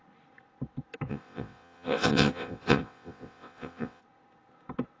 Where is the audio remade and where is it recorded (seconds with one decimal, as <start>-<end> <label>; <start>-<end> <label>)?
0.0-1.1 recorded; 1.1-4.0 remade; 4.0-5.0 recorded